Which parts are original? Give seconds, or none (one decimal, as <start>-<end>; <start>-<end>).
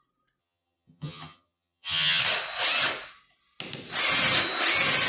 0.0-0.4; 2.2-5.1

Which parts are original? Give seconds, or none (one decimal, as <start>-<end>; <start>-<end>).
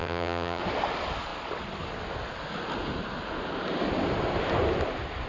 0.6-5.3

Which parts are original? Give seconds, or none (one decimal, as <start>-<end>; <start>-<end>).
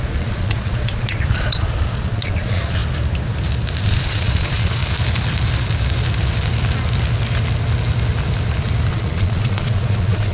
2.8-3.8; 4.8-8.9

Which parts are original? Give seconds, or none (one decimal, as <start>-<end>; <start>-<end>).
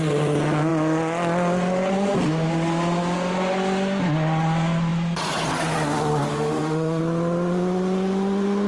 0.0-6.3; 7.0-8.7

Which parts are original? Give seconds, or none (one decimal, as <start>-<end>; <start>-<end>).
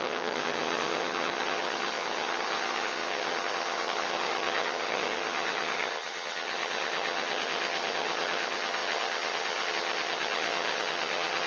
none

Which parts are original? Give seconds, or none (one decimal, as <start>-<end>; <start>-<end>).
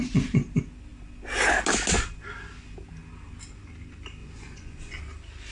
0.0-4.2; 5.0-5.5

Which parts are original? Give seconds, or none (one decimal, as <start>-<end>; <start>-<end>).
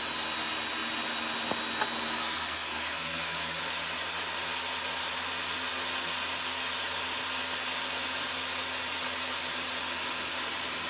0.0-2.2; 3.6-10.9